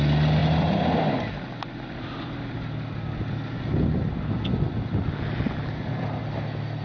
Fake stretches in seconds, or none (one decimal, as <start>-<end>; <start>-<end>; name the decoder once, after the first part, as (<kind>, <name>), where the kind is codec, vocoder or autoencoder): none